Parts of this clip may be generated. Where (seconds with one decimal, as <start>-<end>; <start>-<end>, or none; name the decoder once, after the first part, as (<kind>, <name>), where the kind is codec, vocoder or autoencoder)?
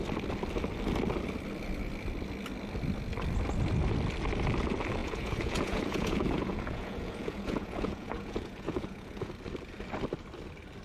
5.0-9.3 (vocoder, Vocos)